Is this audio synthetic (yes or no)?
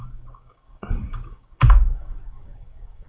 yes